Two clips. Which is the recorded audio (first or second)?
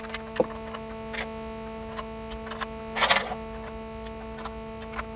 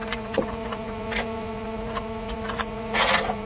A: first